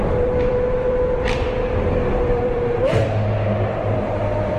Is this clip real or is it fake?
fake